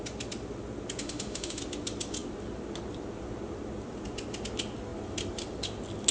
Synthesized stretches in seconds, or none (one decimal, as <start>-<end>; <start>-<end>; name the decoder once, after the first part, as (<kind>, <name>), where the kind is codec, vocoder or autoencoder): 1.0-1.6 (autoencoder, DAC-VAE)